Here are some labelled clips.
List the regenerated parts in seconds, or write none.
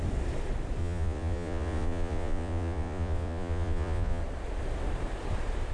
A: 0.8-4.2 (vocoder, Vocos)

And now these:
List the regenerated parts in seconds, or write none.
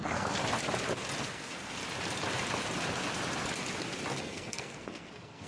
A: 0.0-0.4 (codec, SNAC); 1.2-1.8; 4.2-5.5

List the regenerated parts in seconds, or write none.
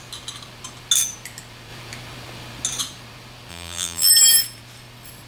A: 3.5-4.1 (vocoder, BigVGAN v2)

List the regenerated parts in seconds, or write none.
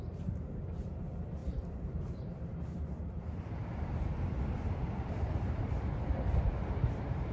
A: 0.0-7.3 (vocoder, BigVGAN v2)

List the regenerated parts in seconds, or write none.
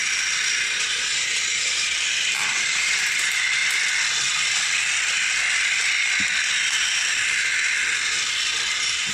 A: 0.7-3.6 (vocoder, BigVGAN v2); 8.7-9.1